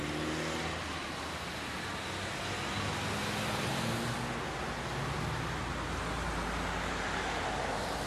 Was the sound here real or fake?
real